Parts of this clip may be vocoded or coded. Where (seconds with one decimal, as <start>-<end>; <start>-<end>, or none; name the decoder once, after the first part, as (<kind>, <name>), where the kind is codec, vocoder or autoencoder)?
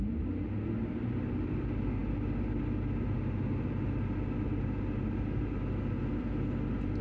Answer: none